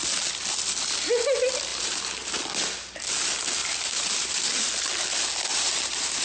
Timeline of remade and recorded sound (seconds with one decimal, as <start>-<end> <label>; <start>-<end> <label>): 0.0-1.7 recorded; 1.7-2.4 remade; 2.4-3.6 recorded; 3.6-4.7 remade; 4.7-5.5 recorded; 5.5-6.2 remade